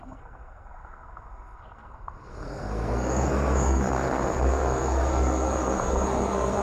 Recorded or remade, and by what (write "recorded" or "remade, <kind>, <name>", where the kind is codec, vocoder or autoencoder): remade, codec, SNAC